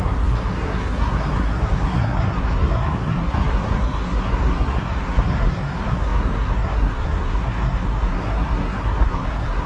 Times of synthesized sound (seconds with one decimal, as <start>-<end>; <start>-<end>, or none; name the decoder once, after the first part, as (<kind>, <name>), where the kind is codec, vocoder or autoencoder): 0.0-9.7 (codec, SNAC)